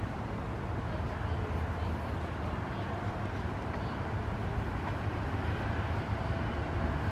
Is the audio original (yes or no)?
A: yes